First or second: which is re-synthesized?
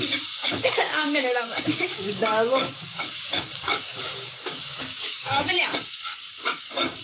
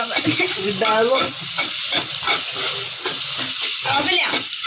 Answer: first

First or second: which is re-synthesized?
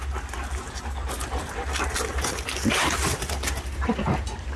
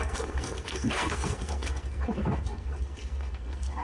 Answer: second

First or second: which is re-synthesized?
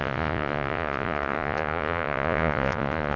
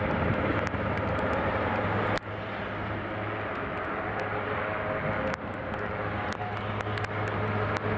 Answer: first